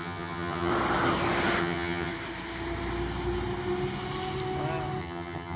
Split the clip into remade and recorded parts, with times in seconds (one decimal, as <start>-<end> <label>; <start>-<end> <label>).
0.0-0.7 remade; 0.7-1.6 recorded; 1.6-2.1 remade; 2.1-5.0 recorded; 5.0-5.6 remade